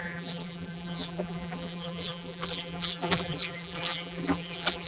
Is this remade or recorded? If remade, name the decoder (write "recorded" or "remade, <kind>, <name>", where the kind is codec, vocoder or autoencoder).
remade, vocoder, BigVGAN v2